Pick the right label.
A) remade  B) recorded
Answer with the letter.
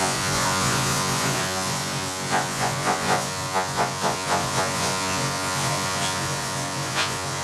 A